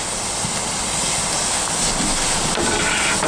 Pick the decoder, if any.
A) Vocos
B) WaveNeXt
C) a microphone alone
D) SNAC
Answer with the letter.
C